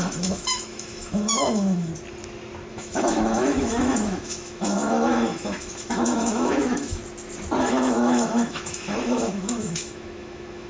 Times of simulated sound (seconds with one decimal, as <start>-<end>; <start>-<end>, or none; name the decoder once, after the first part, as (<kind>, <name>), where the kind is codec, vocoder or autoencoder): 0.0-1.9 (autoencoder, DAC-VAE); 2.7-7.0; 7.6-10.7